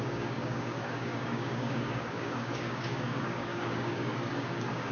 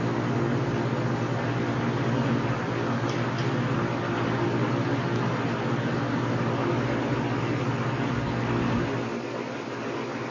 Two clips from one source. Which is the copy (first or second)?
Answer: first